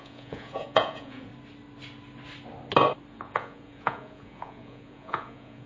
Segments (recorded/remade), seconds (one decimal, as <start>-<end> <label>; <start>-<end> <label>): 0.0-1.3 remade; 1.3-3.1 recorded; 3.1-5.7 remade